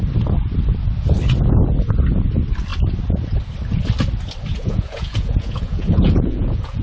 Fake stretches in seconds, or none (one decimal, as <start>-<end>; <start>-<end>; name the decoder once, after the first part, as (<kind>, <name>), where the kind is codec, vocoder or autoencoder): 4.5-6.8 (vocoder, Vocos)